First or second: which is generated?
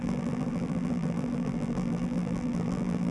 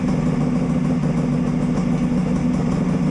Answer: first